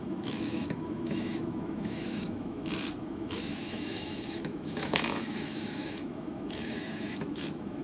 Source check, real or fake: fake